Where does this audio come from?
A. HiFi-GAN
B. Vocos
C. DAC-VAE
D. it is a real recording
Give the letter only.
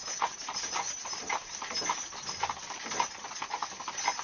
D